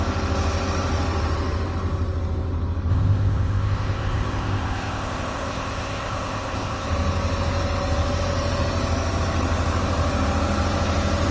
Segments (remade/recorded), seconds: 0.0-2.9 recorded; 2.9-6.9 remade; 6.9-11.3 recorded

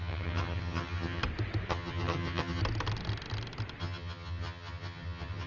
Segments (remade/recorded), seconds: 0.0-1.2 remade; 1.2-1.7 recorded; 1.7-2.6 remade; 2.6-3.8 recorded; 3.8-5.5 remade

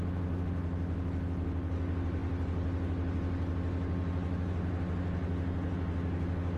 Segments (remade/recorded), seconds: 0.0-6.6 recorded

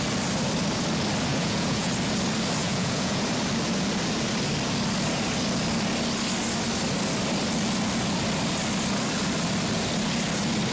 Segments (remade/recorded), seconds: 0.0-1.3 recorded; 1.3-1.9 remade; 1.9-2.6 recorded; 2.6-3.2 remade; 3.2-10.7 recorded

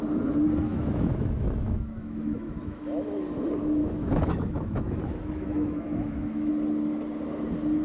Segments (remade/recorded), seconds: 0.0-0.7 recorded; 0.7-3.2 remade; 3.2-3.8 recorded; 3.8-6.5 remade; 6.5-7.8 recorded

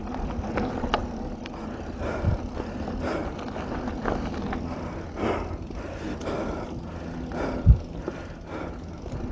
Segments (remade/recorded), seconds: 0.0-9.3 recorded